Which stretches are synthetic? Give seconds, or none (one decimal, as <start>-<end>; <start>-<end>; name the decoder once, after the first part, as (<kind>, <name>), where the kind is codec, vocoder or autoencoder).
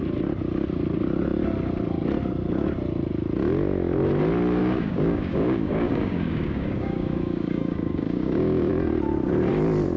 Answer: 4.6-8.7 (codec, DAC)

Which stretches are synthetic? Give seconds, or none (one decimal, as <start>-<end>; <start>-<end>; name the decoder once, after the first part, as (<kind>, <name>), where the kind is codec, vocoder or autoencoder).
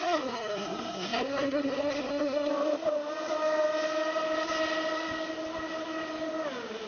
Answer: 0.0-2.5 (codec, SNAC)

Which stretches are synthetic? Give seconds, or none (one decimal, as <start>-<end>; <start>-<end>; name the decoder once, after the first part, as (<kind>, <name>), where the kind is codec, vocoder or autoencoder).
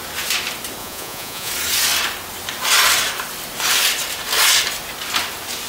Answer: 0.8-1.5 (vocoder, Vocos)